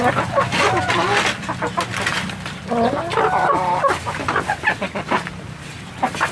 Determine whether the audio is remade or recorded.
recorded